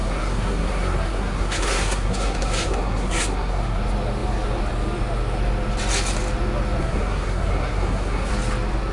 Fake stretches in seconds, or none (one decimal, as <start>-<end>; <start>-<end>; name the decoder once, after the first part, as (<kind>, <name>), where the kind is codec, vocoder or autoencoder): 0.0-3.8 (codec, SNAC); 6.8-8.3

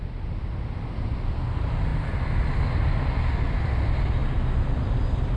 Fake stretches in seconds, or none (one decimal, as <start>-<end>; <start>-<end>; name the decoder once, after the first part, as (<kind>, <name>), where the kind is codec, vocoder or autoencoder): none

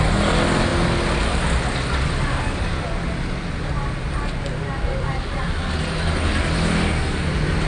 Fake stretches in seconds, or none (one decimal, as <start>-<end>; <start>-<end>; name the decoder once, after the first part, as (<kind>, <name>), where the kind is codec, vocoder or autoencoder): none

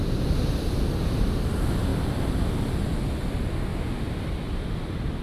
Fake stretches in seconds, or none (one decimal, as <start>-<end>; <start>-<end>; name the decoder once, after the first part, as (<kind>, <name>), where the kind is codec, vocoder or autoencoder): none

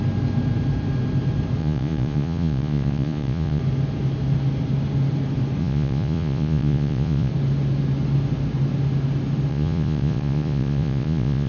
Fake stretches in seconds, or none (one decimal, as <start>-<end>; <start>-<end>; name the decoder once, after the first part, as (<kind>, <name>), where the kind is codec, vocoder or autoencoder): 1.6-3.6 (vocoder, Vocos); 5.6-7.3; 9.5-11.5